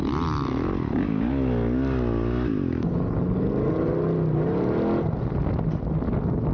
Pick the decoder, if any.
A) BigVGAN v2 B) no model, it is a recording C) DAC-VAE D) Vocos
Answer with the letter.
B